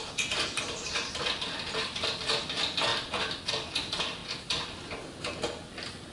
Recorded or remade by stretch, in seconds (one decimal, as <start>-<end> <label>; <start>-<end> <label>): 0.0-6.1 recorded